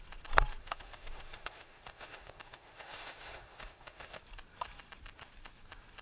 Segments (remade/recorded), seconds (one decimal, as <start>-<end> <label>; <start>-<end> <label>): 0.0-0.6 recorded; 0.6-4.2 remade; 4.2-6.0 recorded